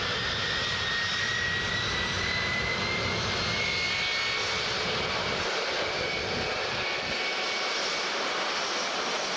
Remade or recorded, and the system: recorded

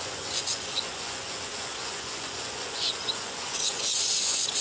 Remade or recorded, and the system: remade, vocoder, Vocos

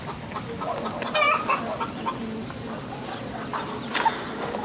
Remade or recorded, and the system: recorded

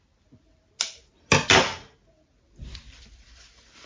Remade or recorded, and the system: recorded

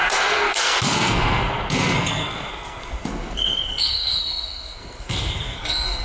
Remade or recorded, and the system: remade, codec, SNAC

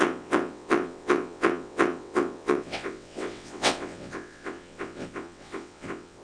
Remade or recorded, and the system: remade, vocoder, WaveNeXt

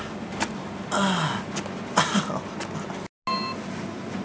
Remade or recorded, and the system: recorded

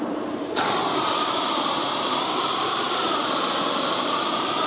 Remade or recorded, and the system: remade, vocoder, BigVGAN v2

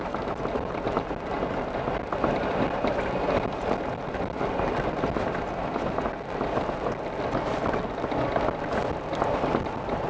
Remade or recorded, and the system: recorded